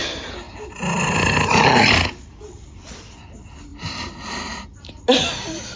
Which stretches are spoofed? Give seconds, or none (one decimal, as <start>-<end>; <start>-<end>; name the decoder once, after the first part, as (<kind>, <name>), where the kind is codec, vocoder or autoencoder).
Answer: none